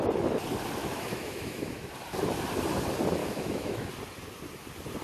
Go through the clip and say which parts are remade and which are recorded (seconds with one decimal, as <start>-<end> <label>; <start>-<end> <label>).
0.0-0.8 recorded; 0.8-1.9 remade; 1.9-3.2 recorded; 3.2-3.9 remade; 3.9-5.0 recorded